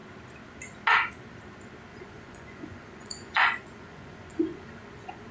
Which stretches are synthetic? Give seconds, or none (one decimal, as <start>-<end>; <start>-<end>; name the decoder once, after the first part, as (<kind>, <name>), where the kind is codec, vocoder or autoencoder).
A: 1.9-5.3 (vocoder, Vocos)